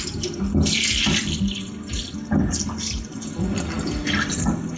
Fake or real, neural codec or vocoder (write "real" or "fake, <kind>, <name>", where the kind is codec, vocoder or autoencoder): real